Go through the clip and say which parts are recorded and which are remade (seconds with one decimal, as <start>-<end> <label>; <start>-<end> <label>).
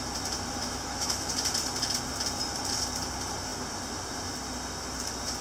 0.0-0.6 recorded; 0.6-1.3 remade; 1.3-5.4 recorded